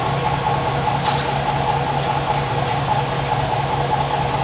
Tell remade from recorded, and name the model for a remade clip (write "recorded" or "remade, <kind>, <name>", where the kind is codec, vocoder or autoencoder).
recorded